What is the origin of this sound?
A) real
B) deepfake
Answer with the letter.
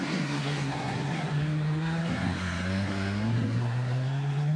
B